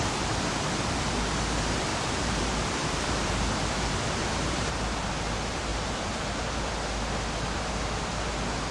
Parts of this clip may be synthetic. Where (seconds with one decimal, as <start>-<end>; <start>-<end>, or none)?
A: 1.9-5.1; 5.7-6.7